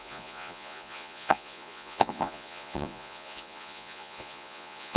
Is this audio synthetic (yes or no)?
yes